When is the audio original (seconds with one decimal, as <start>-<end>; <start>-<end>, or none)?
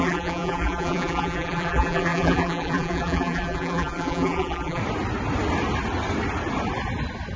4.8-7.4